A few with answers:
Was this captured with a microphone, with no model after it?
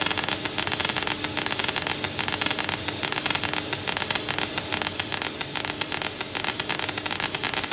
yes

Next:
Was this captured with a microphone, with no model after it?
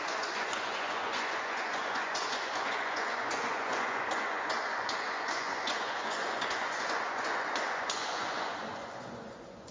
no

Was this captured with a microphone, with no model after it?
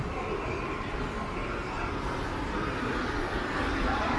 yes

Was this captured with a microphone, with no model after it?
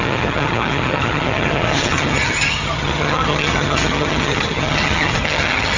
no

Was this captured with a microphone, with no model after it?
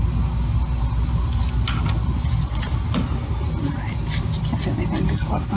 yes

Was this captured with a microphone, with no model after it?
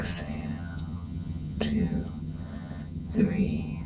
no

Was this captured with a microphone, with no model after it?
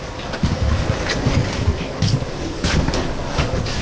no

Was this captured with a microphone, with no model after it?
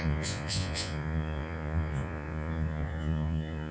no